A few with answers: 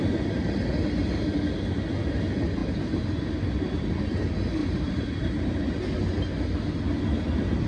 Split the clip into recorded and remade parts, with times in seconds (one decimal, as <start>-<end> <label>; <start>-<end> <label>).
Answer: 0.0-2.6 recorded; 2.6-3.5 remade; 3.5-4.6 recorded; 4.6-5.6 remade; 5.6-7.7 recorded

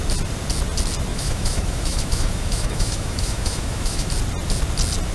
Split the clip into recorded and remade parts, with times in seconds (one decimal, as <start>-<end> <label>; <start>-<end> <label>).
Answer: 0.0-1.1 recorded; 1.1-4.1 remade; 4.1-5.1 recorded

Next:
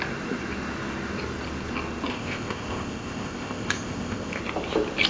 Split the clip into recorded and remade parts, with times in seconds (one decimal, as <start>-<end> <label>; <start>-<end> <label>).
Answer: 0.0-2.1 recorded; 2.1-4.4 remade; 4.4-5.1 recorded